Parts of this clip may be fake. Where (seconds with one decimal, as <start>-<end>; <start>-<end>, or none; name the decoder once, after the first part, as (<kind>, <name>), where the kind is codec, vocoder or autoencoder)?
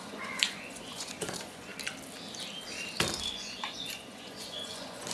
0.0-1.7 (vocoder, Vocos); 3.2-5.1